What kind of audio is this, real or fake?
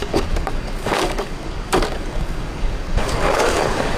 fake